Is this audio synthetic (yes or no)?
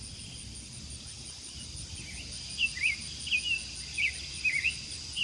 no